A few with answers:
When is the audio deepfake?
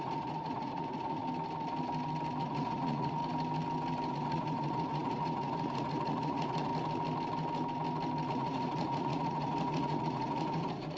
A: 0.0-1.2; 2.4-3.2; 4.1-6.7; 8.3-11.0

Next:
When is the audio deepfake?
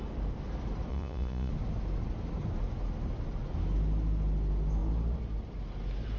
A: 0.9-1.5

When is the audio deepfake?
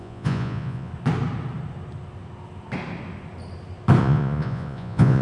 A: 0.0-0.9; 4.0-5.2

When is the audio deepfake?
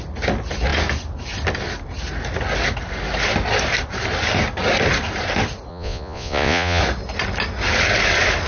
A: 5.7-6.8